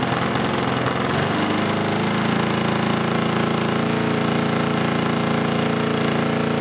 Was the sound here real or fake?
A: real